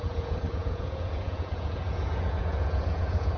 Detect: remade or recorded remade